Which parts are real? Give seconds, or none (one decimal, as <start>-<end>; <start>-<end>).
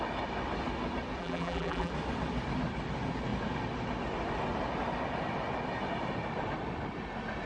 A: 0.0-1.2; 1.9-7.5